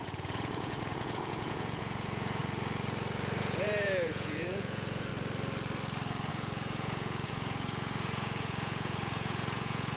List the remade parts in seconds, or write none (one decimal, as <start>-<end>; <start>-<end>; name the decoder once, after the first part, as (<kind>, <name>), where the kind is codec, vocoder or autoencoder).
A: 0.0-2.4 (vocoder, Vocos); 3.4-5.1; 6.3-10.0